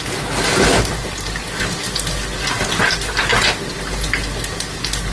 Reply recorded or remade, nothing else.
recorded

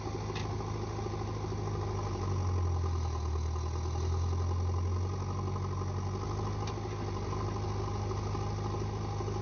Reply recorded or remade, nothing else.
recorded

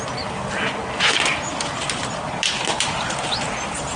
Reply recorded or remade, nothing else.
recorded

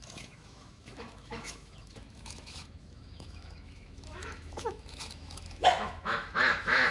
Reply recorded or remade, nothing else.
remade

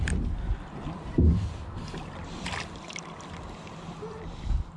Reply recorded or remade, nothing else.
recorded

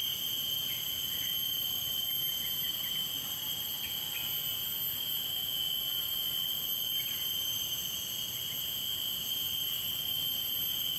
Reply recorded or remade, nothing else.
recorded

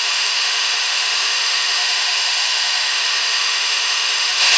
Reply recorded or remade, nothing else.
remade